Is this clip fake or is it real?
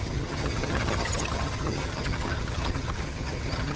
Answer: fake